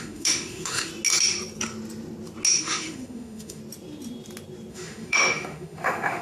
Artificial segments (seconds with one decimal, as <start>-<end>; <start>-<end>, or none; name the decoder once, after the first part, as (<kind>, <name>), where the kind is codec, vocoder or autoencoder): 0.0-0.9 (autoencoder, DAC-VAE); 2.6-3.6; 4.7-6.2